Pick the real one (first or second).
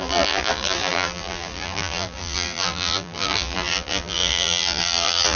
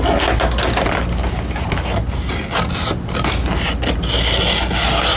second